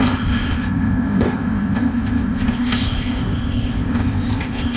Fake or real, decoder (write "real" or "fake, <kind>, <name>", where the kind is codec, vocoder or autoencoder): fake, codec, ZipCodec